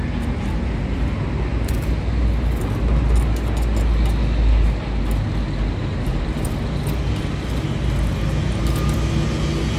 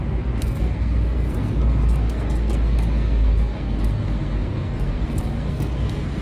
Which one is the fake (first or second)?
second